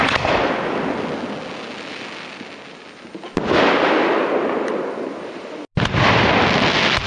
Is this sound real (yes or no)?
yes